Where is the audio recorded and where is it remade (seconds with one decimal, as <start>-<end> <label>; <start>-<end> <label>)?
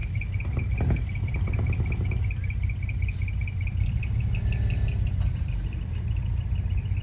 0.0-7.0 recorded